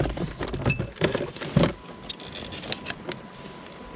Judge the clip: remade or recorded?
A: recorded